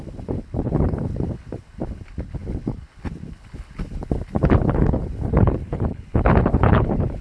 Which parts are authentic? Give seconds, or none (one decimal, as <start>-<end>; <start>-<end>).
none